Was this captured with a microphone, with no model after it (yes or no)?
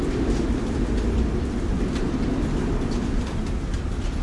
yes